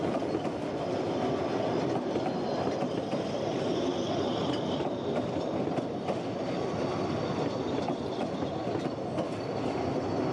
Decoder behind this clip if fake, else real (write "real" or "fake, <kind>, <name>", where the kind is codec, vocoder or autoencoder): real